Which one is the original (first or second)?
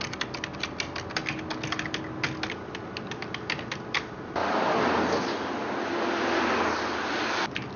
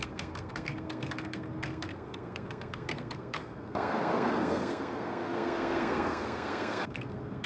first